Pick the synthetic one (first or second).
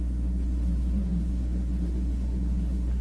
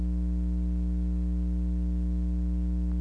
first